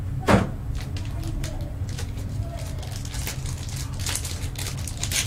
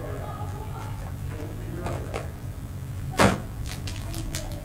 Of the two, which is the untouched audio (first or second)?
first